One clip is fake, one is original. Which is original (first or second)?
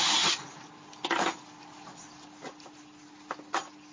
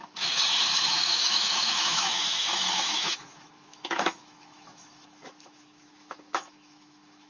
first